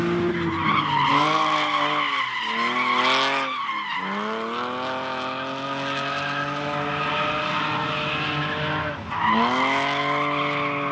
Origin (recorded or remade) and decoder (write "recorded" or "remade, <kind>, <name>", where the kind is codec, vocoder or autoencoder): recorded